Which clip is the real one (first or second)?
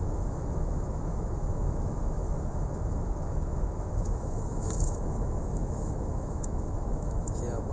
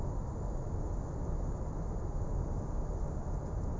second